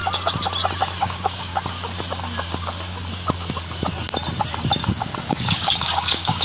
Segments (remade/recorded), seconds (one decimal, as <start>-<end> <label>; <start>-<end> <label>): 0.0-1.0 recorded; 1.0-1.5 remade; 1.5-5.3 recorded; 5.3-6.4 remade